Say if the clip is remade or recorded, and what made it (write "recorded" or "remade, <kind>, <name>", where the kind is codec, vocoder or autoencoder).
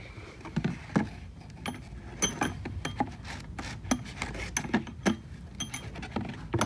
recorded